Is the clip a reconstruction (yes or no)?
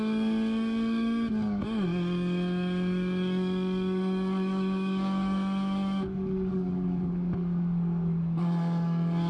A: yes